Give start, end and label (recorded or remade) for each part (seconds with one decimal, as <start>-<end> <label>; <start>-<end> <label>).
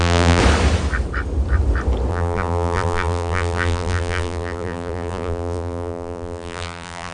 0.0-0.4 remade; 0.4-2.1 recorded; 2.1-7.1 remade